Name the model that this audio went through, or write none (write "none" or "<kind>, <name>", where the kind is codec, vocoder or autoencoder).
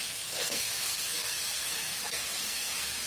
codec, SNAC